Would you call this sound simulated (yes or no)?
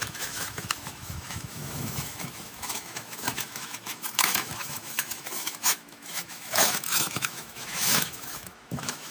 yes